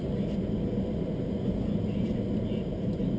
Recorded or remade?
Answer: recorded